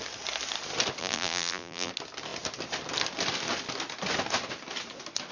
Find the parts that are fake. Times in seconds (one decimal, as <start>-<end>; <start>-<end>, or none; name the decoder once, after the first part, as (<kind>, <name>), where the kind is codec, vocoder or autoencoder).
1.0-1.9 (vocoder, BigVGAN v2)

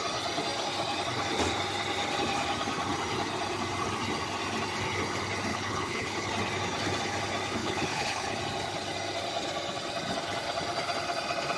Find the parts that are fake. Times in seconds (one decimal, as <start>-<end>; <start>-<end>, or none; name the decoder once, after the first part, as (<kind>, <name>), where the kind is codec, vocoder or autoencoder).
5.5-6.3 (codec, HILCodec); 7.6-8.4